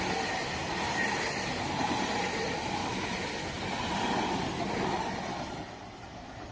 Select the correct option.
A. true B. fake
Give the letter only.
A